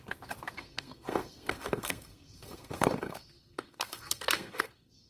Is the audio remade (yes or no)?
yes